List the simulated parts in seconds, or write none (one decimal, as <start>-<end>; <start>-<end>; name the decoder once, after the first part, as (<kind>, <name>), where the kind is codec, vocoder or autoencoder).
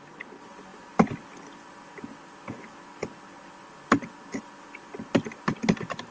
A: none